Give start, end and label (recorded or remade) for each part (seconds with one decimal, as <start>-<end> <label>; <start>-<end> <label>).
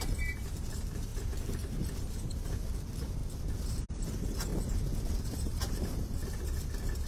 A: 0.0-3.2 remade; 3.2-3.9 recorded; 3.9-4.5 remade; 4.5-5.1 recorded; 5.1-6.2 remade; 6.2-7.1 recorded